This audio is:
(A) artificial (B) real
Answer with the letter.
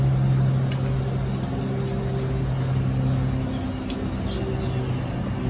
B